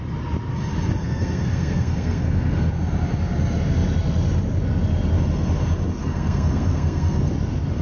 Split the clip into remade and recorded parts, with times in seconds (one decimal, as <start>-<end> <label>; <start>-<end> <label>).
0.0-1.0 recorded; 1.0-2.7 remade; 2.7-6.0 recorded; 6.0-7.3 remade; 7.3-7.8 recorded